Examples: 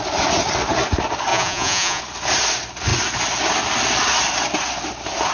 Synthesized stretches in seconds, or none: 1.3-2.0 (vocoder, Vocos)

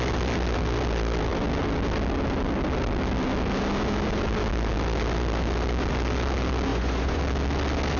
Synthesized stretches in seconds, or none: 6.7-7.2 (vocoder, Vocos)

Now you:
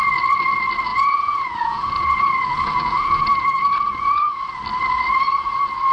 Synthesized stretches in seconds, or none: 0.9-4.4 (vocoder, Vocos)

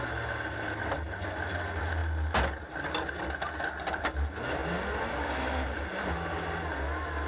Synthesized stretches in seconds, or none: none